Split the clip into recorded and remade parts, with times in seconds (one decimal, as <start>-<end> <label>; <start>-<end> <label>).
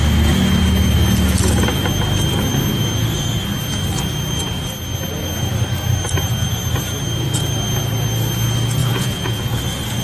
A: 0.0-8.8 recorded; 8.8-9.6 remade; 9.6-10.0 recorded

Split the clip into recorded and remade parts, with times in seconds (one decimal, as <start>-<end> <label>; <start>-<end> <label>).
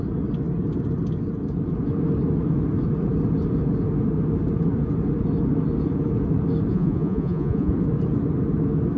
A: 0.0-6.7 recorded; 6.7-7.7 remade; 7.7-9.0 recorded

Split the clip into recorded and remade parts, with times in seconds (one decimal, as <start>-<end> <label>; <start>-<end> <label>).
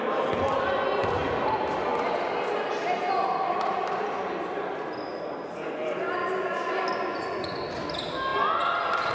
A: 0.0-7.1 recorded; 7.1-7.6 remade; 7.6-9.1 recorded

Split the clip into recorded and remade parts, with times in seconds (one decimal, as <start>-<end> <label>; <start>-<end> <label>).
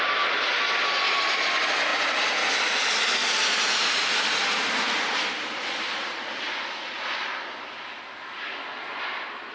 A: 0.0-9.5 recorded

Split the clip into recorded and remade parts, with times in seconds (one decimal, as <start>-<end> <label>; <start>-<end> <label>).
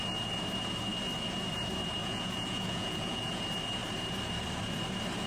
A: 0.0-2.0 recorded; 2.0-3.4 remade; 3.4-5.3 recorded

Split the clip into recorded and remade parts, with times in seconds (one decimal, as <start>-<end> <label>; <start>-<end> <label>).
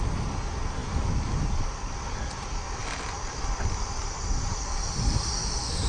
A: 0.0-5.9 recorded